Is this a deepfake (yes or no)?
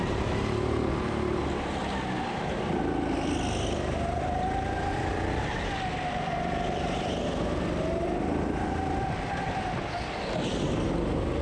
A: no